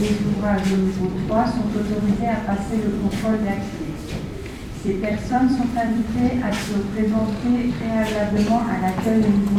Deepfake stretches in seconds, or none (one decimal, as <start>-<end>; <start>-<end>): 4.6-6.6